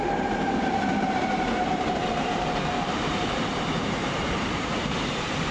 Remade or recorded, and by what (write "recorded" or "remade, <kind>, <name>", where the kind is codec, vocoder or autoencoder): remade, vocoder, BigVGAN v2